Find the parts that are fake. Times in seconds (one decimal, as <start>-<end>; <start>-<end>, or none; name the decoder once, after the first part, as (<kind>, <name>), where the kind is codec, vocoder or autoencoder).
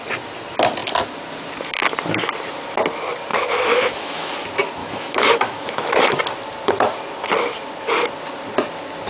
3.3-4.3 (autoencoder, DAC-VAE); 4.8-6.2